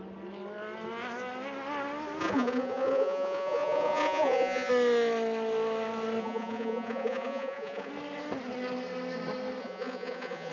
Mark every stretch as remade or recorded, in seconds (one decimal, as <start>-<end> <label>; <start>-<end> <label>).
0.0-2.2 recorded; 2.2-4.7 remade; 4.7-6.2 recorded; 6.2-7.9 remade; 7.9-9.6 recorded; 9.6-10.5 remade